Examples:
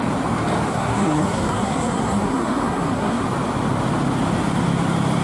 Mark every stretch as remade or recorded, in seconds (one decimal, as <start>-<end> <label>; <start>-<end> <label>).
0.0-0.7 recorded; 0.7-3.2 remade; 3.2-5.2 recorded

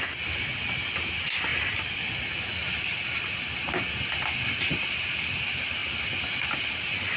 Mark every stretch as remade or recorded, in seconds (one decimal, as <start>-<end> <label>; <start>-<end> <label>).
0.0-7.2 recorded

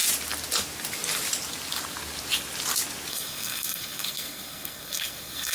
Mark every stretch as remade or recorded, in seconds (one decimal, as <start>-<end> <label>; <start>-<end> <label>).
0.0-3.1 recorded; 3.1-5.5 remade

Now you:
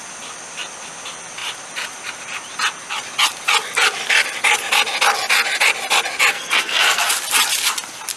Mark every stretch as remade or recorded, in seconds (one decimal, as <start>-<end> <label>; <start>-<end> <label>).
0.0-6.3 recorded; 6.3-7.1 remade; 7.1-8.2 recorded

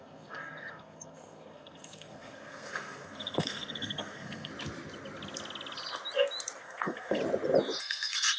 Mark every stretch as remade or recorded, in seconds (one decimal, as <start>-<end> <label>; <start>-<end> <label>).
0.0-4.5 remade; 4.5-6.6 recorded; 6.6-7.2 remade; 7.2-7.8 recorded; 7.8-8.4 remade